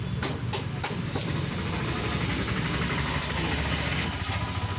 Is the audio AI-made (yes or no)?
no